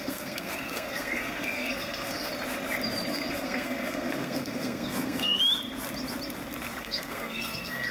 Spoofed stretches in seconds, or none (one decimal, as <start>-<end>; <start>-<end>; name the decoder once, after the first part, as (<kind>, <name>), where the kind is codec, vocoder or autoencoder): 0.0-2.3 (codec, SNAC); 3.1-5.4; 6.8-7.9